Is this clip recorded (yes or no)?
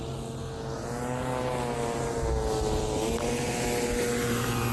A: yes